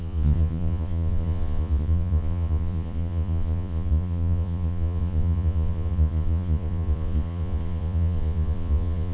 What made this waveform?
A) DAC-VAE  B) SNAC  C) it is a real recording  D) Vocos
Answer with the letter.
D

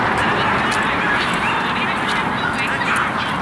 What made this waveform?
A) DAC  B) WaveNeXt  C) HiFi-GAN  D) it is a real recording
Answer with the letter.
D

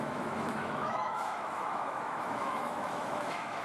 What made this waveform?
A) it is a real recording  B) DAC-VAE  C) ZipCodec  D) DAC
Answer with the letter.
B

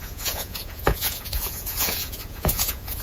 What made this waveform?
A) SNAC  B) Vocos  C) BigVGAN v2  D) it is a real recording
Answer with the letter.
B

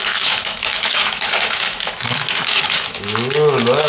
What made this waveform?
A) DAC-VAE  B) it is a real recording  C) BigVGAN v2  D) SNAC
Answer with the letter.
A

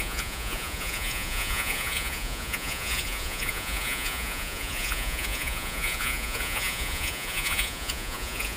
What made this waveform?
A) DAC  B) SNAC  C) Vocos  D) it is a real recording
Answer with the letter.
C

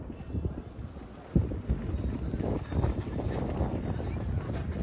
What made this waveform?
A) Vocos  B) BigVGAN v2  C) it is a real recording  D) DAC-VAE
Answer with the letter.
C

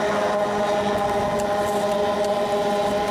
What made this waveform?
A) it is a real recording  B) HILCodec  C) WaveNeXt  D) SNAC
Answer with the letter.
A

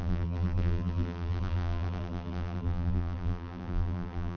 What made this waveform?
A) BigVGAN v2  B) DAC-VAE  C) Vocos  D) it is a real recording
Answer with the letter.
A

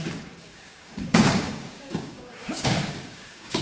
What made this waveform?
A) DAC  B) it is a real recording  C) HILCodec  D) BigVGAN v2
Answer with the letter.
A